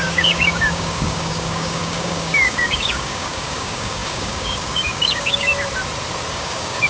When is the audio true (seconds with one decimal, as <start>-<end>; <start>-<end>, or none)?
5.5-6.3